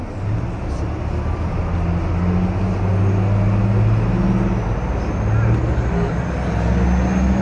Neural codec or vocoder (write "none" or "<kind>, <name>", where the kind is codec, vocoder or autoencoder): none